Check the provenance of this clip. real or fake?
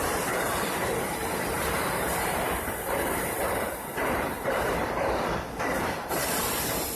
fake